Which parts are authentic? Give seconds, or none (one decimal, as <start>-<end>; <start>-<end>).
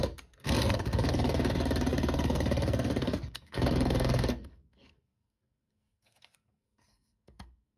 none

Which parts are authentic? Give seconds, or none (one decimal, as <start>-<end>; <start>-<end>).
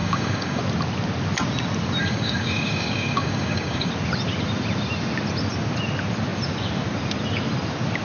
0.6-2.0; 3.9-8.0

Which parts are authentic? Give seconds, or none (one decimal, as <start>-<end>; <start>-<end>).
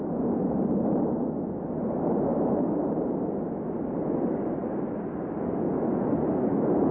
0.0-6.9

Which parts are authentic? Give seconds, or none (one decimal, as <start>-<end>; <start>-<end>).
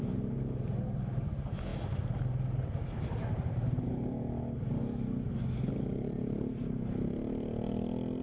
0.0-8.2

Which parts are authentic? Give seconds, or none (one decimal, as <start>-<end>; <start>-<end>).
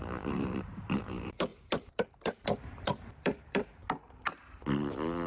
3.8-5.3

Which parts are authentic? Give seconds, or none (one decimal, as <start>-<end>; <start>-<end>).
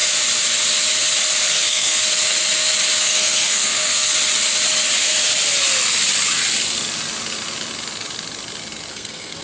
0.0-1.5; 2.0-3.0; 4.1-8.9